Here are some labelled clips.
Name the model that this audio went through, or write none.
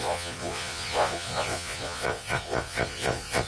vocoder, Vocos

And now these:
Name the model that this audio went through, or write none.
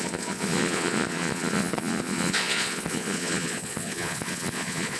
vocoder, Vocos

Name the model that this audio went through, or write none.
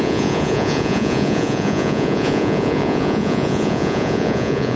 vocoder, Vocos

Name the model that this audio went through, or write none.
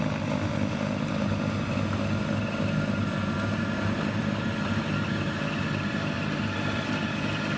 none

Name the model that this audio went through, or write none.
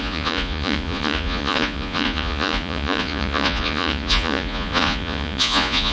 vocoder, Vocos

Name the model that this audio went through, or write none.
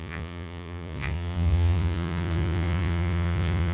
vocoder, Vocos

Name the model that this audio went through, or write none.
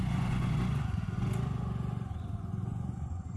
vocoder, Vocos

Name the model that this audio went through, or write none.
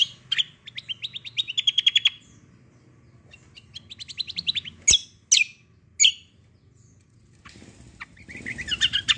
none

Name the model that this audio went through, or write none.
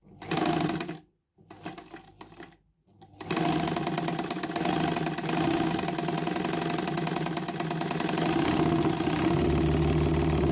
none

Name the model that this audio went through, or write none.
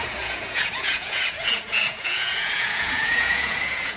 vocoder, Vocos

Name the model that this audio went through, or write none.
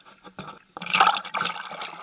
none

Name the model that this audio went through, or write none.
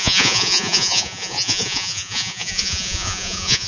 vocoder, Vocos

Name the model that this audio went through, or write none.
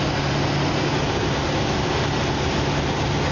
none